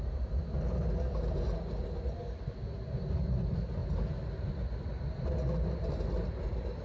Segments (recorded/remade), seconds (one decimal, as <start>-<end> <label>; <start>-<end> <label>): 0.0-6.8 recorded